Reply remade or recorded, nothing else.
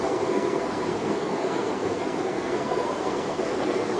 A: remade